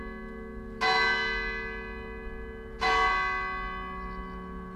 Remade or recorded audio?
recorded